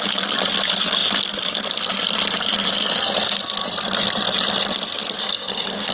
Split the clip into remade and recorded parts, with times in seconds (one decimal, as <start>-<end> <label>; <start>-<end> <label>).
0.0-5.2 recorded; 5.2-5.9 remade